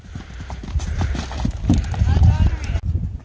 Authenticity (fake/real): fake